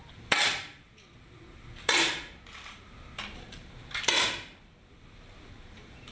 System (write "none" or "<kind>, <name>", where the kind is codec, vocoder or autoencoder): vocoder, BigVGAN v2